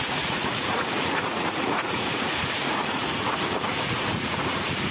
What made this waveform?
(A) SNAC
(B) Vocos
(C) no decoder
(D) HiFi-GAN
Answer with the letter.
B